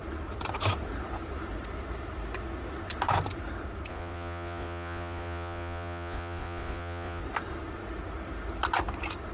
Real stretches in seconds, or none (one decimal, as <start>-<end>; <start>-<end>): 0.0-3.9; 7.2-9.3